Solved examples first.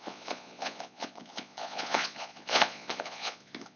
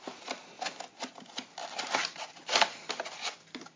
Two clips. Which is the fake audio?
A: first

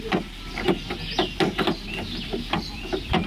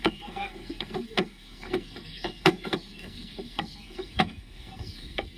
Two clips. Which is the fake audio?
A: second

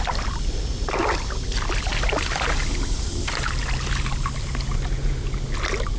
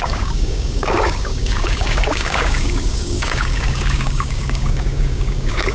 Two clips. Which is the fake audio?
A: second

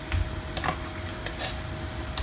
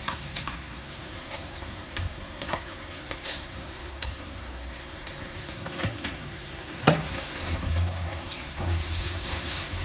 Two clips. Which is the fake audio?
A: second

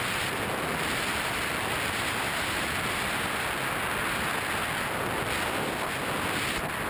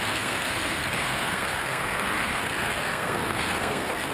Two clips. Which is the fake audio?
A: second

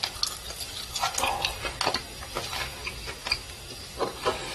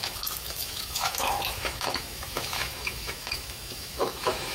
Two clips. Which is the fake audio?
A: second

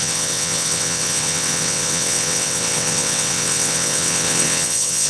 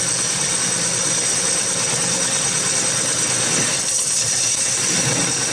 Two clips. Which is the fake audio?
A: first